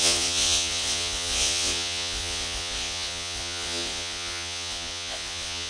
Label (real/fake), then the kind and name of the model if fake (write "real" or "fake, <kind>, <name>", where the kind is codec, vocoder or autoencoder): fake, vocoder, Vocos